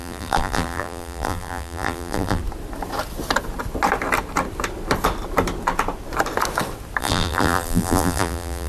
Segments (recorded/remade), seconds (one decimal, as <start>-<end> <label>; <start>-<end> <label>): 0.0-2.4 remade; 2.4-7.0 recorded; 7.0-8.7 remade